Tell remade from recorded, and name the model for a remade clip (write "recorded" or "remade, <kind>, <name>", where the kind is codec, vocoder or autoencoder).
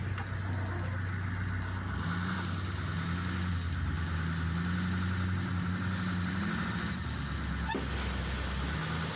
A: recorded